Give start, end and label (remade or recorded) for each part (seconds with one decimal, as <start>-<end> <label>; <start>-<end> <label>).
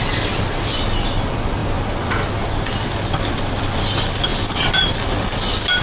0.0-5.8 recorded